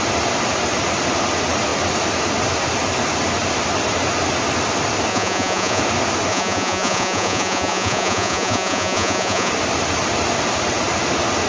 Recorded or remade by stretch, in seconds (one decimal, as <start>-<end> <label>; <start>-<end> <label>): 0.0-5.1 recorded; 5.1-5.8 remade; 5.8-6.3 recorded; 6.3-9.5 remade; 9.5-11.5 recorded